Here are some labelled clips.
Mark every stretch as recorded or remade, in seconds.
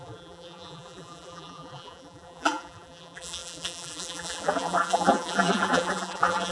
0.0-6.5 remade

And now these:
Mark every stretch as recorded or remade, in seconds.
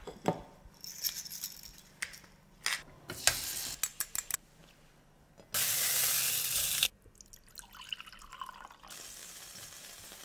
0.0-3.9 recorded; 3.9-4.6 remade; 4.6-9.2 recorded; 9.2-10.2 remade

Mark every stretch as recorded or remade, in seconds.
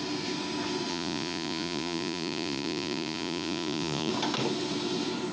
0.0-0.9 recorded; 0.9-4.1 remade; 4.1-5.3 recorded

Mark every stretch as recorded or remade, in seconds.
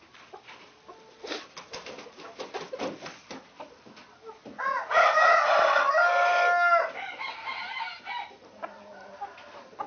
0.0-9.9 recorded